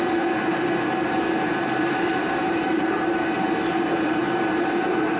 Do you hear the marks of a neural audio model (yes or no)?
yes